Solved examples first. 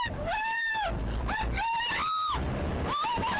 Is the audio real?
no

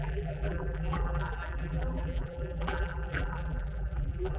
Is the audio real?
no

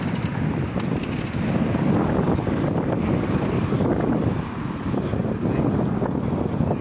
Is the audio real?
yes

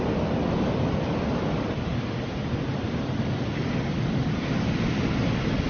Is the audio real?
yes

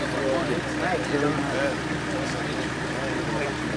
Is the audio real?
yes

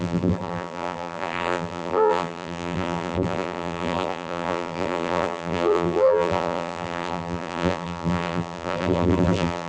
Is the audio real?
no